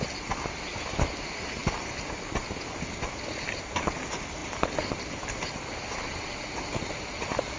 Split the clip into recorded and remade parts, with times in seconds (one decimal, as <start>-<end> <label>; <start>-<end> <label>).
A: 0.0-7.6 recorded